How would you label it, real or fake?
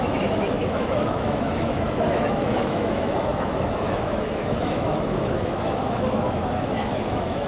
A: fake